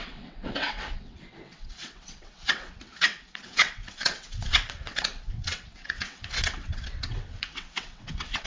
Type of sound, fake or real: fake